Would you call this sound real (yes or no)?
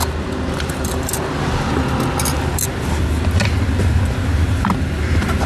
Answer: yes